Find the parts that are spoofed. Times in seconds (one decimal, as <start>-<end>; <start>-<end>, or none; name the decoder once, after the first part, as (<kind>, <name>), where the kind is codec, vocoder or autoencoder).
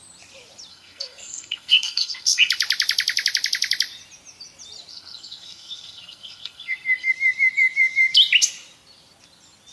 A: 0.7-2.5 (codec, SNAC); 4.9-7.1